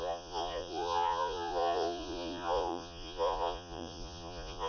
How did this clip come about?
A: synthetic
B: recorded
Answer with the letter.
A